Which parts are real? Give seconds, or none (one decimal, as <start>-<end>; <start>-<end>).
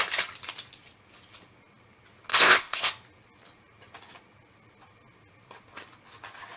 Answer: 0.0-2.3; 2.9-6.6